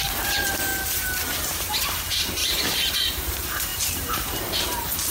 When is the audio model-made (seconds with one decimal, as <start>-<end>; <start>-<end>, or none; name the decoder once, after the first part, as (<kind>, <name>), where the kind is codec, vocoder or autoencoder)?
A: 2.4-2.9 (vocoder, BigVGAN v2); 3.7-4.4

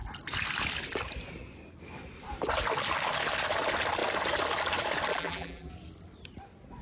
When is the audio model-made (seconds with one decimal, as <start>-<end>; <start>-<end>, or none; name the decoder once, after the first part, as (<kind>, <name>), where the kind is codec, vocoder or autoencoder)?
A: 5.1-5.7 (vocoder, BigVGAN v2)

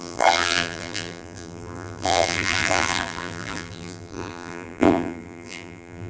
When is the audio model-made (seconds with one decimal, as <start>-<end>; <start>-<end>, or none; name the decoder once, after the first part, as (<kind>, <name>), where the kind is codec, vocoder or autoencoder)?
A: 0.0-6.1 (vocoder, BigVGAN v2)

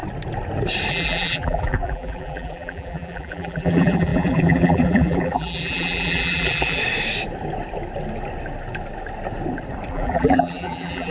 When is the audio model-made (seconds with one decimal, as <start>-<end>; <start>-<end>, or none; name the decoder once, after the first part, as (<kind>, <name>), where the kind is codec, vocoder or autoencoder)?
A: 0.9-6.8 (vocoder, BigVGAN v2); 9.9-11.1

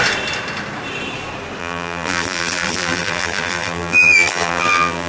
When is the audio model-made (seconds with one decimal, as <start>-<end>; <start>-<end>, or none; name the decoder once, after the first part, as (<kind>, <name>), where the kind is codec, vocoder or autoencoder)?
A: 1.6-5.1 (vocoder, BigVGAN v2)